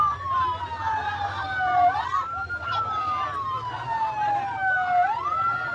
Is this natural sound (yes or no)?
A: yes